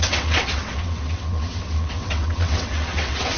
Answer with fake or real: fake